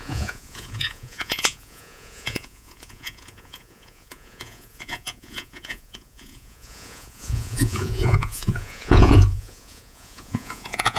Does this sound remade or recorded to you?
remade